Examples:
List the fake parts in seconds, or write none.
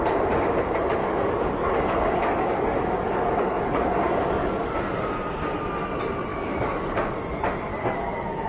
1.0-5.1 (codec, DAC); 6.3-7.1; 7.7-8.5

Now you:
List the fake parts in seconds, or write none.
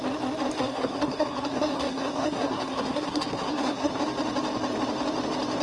0.6-3.9 (codec, SNAC)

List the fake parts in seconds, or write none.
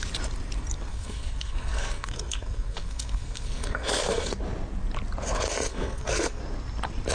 0.9-4.3 (codec, SNAC); 5.7-6.4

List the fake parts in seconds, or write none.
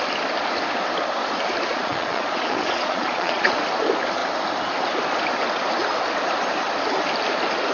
1.7-3.5 (vocoder, Vocos)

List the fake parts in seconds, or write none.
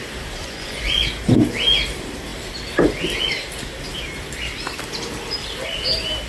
0.4-1.0 (vocoder, Vocos)